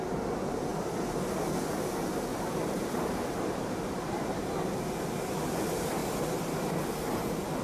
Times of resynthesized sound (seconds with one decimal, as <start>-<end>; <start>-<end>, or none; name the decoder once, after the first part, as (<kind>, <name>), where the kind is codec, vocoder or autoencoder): 2.3-4.9 (vocoder, BigVGAN v2)